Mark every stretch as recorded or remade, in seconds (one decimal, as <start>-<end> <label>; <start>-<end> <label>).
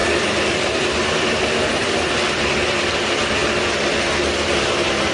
0.0-5.1 recorded